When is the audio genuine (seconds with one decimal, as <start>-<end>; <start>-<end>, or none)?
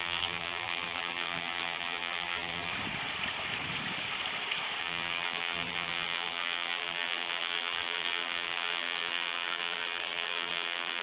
2.7-4.8